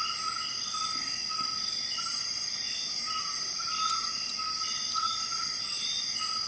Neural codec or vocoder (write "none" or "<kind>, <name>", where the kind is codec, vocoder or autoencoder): none